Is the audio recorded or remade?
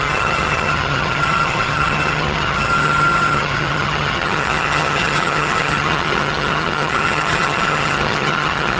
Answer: remade